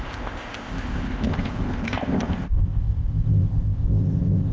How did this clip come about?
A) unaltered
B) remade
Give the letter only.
B